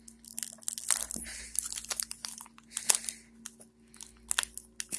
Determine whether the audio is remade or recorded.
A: recorded